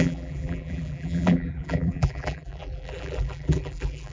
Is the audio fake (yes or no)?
yes